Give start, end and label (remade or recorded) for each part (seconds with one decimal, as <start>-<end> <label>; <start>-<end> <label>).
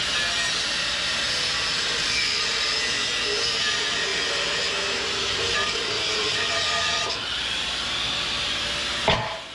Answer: 0.0-2.2 recorded; 2.2-3.6 remade; 3.6-4.1 recorded; 4.1-7.2 remade; 7.2-9.5 recorded